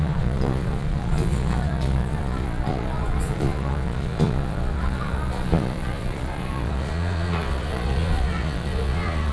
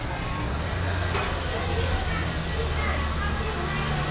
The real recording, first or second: second